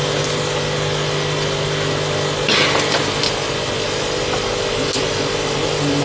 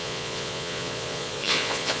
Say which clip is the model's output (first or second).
second